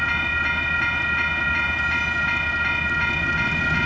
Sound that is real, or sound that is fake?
real